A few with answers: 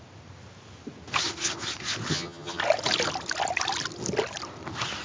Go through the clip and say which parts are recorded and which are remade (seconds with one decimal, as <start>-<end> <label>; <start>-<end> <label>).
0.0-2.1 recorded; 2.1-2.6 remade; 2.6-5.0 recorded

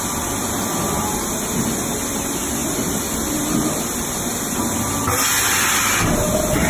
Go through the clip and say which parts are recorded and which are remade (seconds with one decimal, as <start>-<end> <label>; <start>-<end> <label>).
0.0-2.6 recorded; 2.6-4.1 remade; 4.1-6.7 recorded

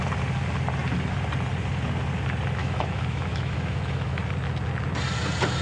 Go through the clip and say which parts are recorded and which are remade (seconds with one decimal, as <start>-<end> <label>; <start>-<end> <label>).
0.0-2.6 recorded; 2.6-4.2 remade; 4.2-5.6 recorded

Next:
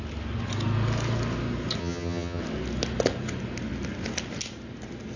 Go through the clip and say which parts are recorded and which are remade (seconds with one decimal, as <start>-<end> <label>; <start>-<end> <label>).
0.0-1.8 recorded; 1.8-2.4 remade; 2.4-5.2 recorded